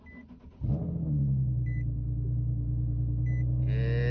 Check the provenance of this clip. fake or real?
real